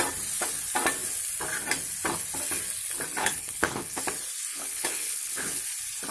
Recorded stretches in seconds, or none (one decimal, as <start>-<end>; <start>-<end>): 0.0-3.2; 4.0-4.5; 5.6-6.1